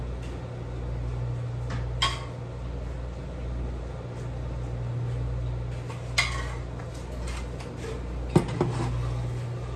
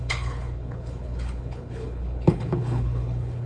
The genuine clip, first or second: first